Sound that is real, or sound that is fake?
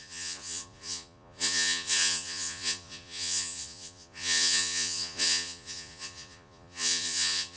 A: fake